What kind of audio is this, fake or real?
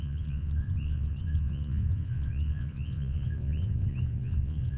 fake